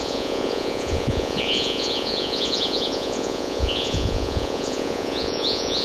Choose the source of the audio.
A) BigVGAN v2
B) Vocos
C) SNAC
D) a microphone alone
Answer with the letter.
B